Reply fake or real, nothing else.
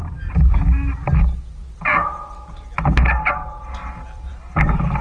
real